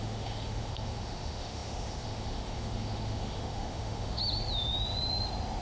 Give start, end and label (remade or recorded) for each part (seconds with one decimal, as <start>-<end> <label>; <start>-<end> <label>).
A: 0.0-4.2 remade; 4.2-5.6 recorded